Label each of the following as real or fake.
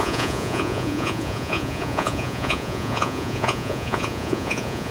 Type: fake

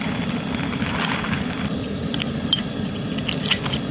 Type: real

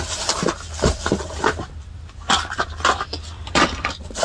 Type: real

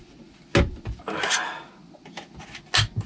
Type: real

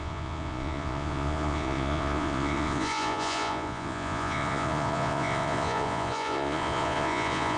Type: fake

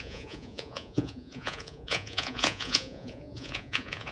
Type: fake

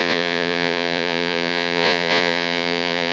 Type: fake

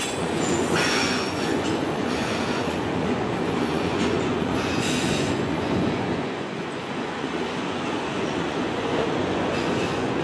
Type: fake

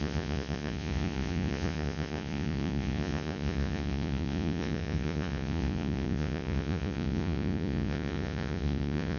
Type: fake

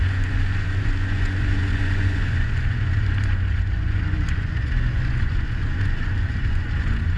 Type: fake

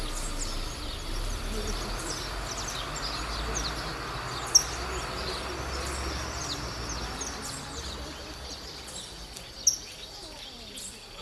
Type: real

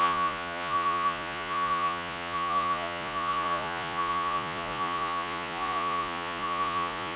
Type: fake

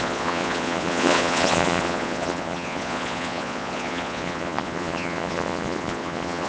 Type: fake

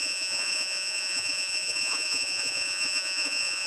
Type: fake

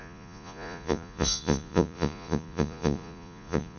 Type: fake